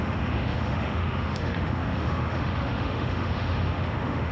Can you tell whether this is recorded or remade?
remade